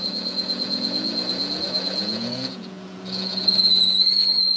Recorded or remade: remade